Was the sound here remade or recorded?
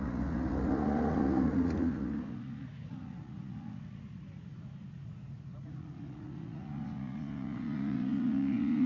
remade